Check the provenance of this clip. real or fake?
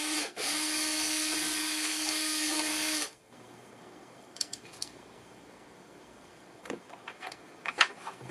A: fake